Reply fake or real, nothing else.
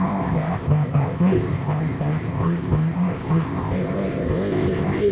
fake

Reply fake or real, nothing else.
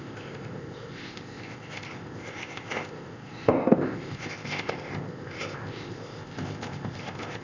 fake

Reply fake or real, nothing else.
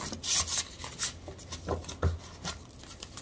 real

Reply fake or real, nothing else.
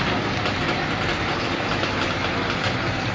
real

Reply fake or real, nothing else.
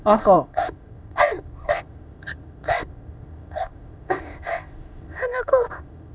fake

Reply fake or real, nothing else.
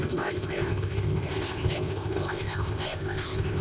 fake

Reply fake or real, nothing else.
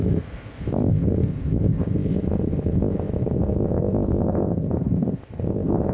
fake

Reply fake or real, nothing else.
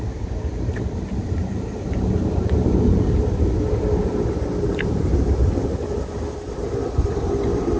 real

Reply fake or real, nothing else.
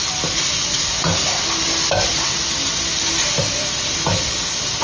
real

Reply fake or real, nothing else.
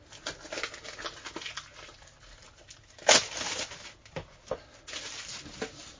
real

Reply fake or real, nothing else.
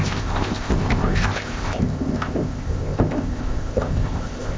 fake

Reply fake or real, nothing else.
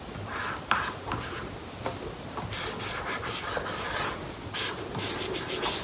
real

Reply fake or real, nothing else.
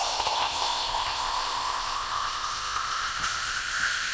fake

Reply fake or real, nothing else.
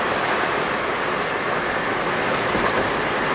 real